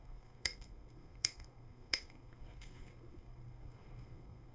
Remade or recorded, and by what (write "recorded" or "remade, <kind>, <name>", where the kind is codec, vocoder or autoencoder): remade, codec, SNAC